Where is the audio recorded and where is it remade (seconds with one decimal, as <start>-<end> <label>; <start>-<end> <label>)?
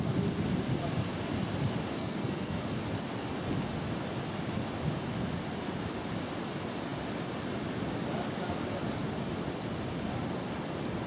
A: 0.0-2.0 recorded; 2.0-2.6 remade; 2.6-11.1 recorded